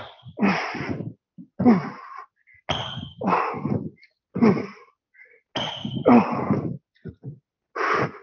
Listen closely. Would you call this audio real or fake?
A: real